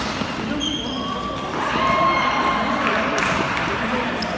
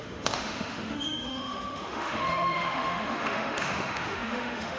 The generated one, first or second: second